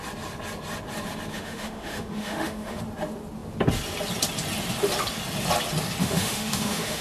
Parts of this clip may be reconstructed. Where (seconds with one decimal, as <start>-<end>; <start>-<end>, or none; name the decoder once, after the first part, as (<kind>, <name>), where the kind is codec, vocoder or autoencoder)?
1.3-2.8 (autoencoder, DAC-VAE); 6.0-7.0